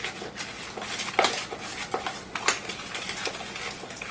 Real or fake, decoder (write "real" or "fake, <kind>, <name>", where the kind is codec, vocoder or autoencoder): real